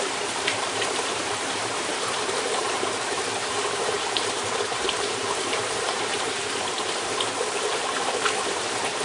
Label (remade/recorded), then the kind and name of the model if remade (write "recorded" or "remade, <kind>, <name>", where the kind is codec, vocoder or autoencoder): remade, vocoder, BigVGAN v2